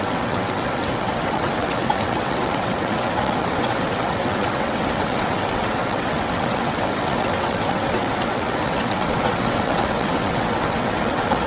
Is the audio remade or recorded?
remade